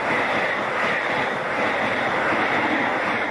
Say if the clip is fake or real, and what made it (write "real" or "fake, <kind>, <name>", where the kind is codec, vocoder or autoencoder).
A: real